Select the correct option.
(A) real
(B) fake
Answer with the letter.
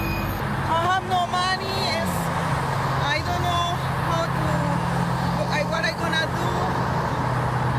A